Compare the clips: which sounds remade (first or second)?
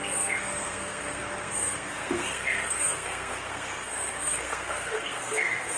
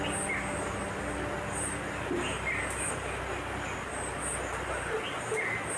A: first